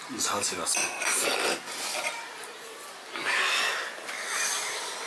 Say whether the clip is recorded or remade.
recorded